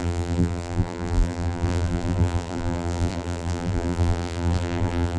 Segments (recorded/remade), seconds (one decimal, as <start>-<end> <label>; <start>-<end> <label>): 0.0-5.2 remade

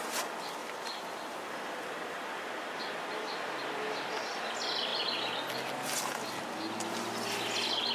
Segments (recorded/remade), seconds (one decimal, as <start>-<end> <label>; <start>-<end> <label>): 0.0-0.6 recorded; 0.6-2.5 remade; 2.5-7.9 recorded

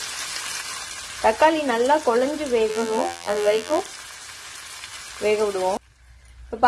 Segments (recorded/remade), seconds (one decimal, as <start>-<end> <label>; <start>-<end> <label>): 0.0-2.7 recorded; 2.7-3.8 remade; 3.8-6.7 recorded

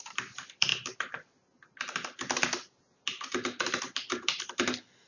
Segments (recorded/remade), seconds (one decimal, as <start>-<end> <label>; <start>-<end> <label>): 0.0-0.7 remade; 0.7-3.8 recorded; 3.8-5.1 remade

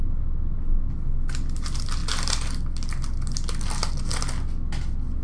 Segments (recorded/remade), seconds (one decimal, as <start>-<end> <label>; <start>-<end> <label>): 0.0-5.2 recorded

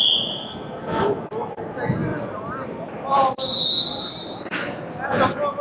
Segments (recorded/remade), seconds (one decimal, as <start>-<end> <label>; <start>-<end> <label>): 0.0-2.1 recorded; 2.1-4.4 remade; 4.4-5.6 recorded

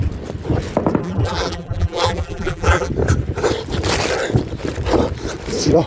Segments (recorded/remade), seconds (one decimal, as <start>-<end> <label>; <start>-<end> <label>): 0.0-1.0 recorded; 1.0-2.9 remade; 2.9-5.9 recorded

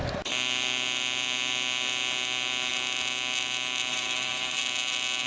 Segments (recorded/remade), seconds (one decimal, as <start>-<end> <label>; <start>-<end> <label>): 0.0-3.9 recorded; 3.9-4.6 remade; 4.6-5.3 recorded